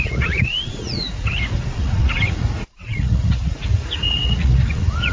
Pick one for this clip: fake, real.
fake